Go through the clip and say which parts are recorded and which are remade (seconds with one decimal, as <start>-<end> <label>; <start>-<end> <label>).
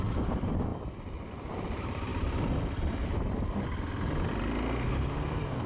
0.0-5.7 recorded